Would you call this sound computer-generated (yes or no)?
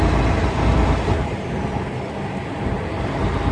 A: no